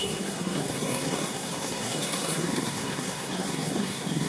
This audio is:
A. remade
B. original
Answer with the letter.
A